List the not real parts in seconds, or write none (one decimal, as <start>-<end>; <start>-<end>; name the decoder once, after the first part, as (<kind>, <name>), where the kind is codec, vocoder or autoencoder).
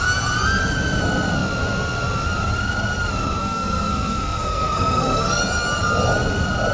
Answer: 3.4-5.4 (codec, SNAC)